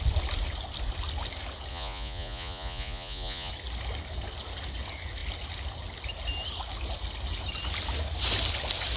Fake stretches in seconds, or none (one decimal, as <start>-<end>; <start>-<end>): 1.7-3.5